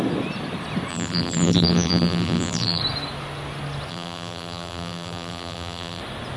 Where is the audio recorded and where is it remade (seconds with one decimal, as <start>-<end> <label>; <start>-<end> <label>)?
0.0-0.9 recorded; 0.9-2.8 remade; 2.8-3.9 recorded; 3.9-6.0 remade; 6.0-6.4 recorded